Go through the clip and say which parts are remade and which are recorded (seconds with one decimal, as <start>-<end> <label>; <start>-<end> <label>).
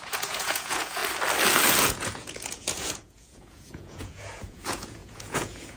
0.0-1.0 remade; 1.0-1.8 recorded; 1.8-5.8 remade